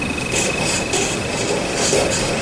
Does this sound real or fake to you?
real